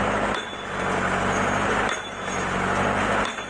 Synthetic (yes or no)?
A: no